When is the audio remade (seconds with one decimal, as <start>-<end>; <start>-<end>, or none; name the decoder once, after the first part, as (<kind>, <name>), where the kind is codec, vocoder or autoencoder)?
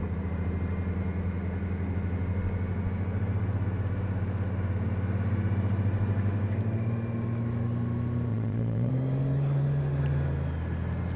8.3-8.9 (vocoder, Vocos)